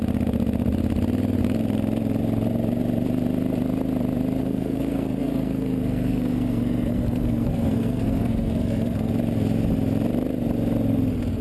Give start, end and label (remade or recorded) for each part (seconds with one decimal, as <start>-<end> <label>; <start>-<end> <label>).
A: 0.0-4.4 recorded; 4.4-9.1 remade; 9.1-11.4 recorded